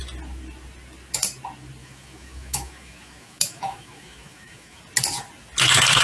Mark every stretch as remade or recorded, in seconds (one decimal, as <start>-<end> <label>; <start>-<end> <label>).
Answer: 0.0-1.8 recorded; 1.8-4.8 remade; 4.8-6.0 recorded